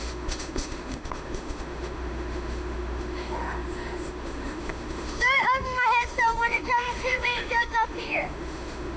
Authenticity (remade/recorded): remade